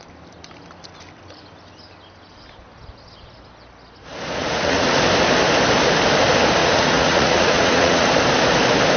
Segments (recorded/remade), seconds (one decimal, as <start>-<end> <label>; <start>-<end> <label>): 0.0-4.4 recorded; 4.4-5.0 remade; 5.0-6.6 recorded; 6.6-8.1 remade; 8.1-9.0 recorded